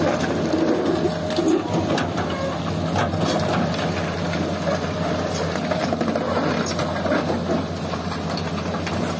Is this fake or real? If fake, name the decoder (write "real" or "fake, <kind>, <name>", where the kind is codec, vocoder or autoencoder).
real